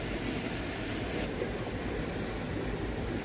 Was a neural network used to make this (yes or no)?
no